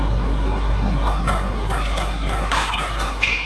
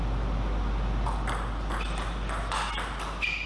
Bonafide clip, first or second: second